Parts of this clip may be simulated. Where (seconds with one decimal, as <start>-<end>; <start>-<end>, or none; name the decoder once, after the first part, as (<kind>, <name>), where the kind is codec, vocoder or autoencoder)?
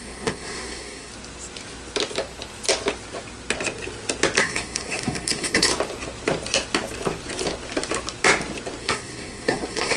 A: 0.0-1.1 (codec, SNAC); 4.4-5.7; 8.8-10.0